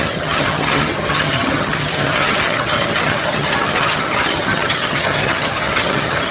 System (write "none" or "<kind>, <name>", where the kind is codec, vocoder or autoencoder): vocoder, HiFi-GAN